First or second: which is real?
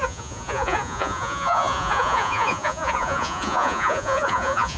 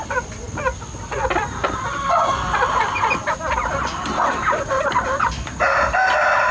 second